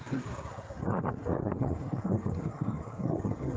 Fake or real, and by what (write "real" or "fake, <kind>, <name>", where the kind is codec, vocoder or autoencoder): fake, codec, SNAC